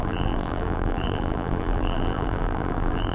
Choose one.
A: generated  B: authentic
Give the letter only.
A